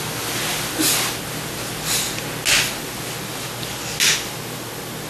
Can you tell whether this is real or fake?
real